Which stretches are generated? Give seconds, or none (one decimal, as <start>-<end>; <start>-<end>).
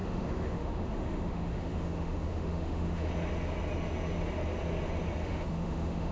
0.0-3.1; 5.2-6.1